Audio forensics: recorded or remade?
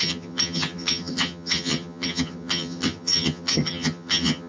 remade